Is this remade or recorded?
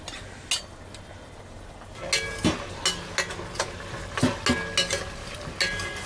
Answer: recorded